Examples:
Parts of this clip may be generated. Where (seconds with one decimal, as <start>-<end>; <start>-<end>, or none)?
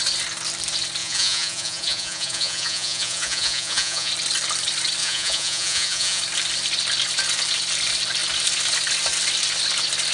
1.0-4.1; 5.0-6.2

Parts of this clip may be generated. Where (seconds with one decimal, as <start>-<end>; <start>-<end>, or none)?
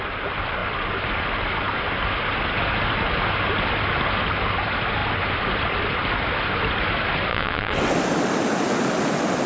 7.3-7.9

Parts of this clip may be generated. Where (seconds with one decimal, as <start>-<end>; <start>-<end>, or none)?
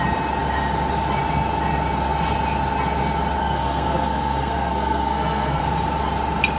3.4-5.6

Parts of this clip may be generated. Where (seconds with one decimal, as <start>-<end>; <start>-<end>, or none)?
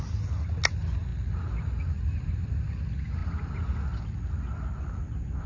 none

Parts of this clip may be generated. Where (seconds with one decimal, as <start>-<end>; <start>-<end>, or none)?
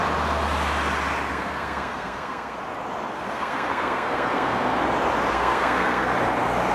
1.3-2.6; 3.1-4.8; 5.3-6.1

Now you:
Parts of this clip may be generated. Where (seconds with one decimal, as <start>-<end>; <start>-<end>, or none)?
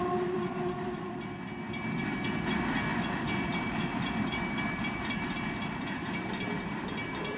0.0-7.4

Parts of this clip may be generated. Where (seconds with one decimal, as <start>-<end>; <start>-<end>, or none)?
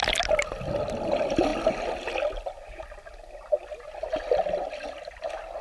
none